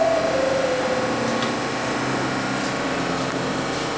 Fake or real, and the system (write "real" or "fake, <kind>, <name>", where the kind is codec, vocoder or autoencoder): real